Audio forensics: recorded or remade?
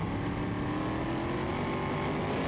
recorded